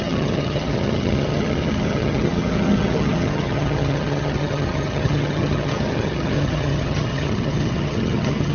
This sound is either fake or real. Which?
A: fake